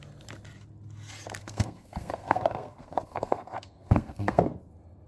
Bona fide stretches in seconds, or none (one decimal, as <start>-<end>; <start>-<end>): 0.0-1.4; 4.5-5.1